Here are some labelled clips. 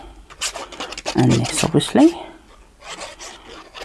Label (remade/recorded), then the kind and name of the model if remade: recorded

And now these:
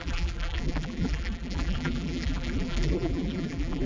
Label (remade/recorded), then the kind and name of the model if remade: remade, vocoder, BigVGAN v2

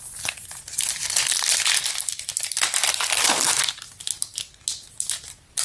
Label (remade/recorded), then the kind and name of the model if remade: recorded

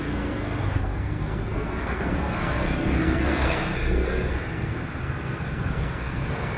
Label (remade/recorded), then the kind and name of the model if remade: remade, codec, SNAC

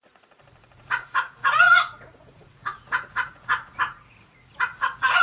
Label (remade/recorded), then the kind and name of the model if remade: remade, vocoder, Vocos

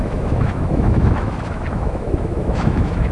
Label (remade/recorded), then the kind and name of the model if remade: remade, autoencoder, DAC-VAE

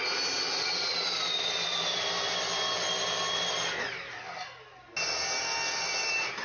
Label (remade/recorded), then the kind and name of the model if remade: recorded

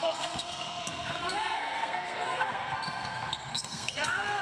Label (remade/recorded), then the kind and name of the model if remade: remade, codec, SNAC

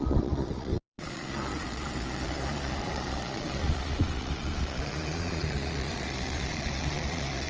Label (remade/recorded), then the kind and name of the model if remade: remade, vocoder, Vocos